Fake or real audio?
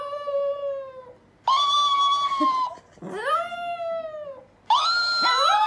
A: real